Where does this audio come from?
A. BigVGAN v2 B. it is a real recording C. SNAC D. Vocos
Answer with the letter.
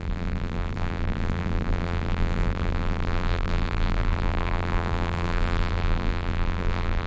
A